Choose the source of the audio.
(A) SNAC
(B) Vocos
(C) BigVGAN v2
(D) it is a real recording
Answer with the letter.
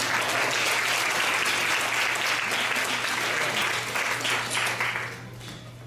D